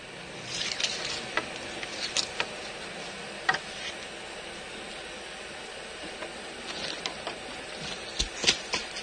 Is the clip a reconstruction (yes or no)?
no